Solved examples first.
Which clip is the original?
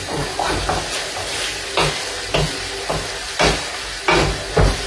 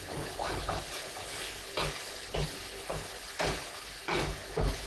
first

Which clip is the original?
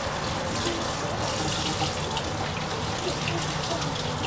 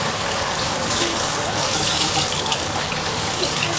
first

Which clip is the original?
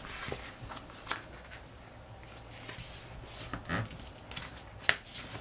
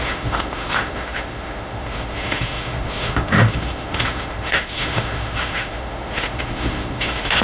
first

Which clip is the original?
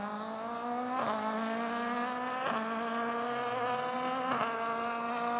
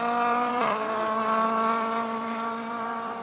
first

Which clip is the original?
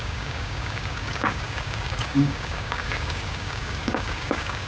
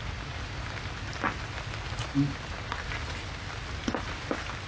second